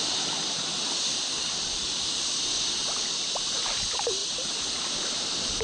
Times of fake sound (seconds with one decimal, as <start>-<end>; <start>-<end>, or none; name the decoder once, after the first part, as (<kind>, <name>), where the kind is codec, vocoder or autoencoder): none